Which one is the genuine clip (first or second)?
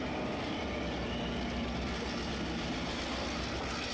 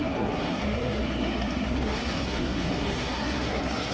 first